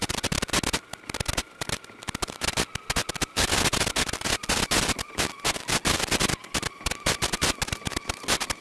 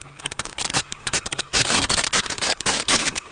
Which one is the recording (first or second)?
first